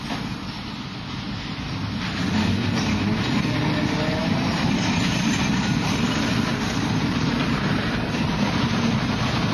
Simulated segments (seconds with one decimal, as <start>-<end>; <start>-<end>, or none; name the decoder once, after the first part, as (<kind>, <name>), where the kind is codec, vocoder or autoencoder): 4.2-5.5 (vocoder, BigVGAN v2); 6.5-8.3